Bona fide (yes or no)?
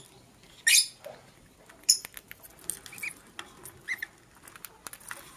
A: yes